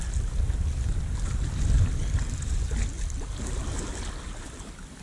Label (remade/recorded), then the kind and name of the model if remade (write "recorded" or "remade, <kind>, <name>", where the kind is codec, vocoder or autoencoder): recorded